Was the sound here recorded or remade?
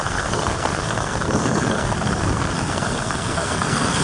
remade